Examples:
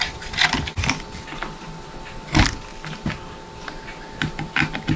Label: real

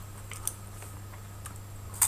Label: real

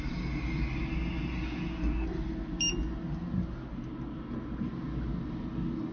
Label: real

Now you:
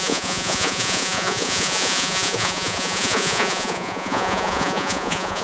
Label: fake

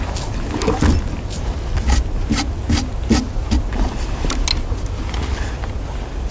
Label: real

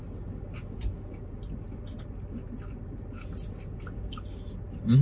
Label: real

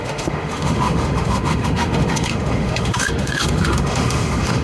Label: fake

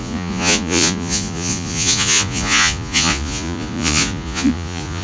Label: fake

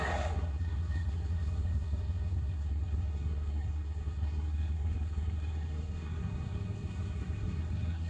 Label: fake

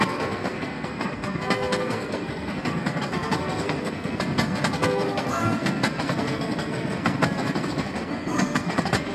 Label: fake